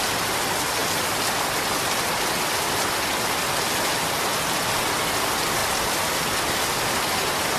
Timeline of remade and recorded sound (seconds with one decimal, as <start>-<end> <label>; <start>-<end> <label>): 0.0-7.6 recorded